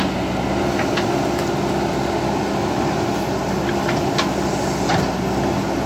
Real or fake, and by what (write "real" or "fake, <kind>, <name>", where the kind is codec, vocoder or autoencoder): real